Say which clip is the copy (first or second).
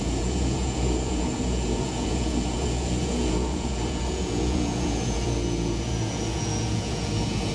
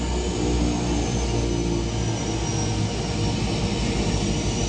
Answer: first